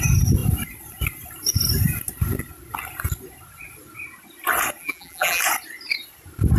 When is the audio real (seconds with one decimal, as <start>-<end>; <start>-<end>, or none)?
0.0-4.8; 5.4-6.6